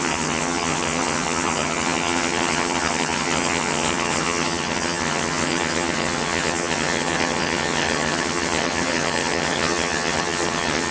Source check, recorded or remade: remade